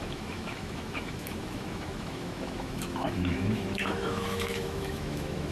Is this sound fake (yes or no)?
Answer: yes